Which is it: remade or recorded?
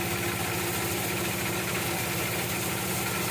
recorded